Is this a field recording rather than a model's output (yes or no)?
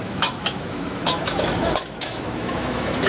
no